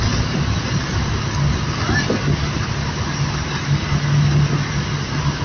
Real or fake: real